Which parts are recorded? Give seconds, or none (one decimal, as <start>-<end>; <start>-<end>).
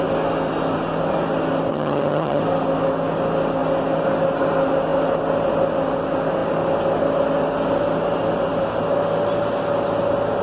0.0-1.7; 2.4-10.4